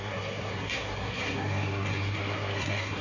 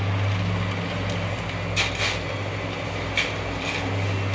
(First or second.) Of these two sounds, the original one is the second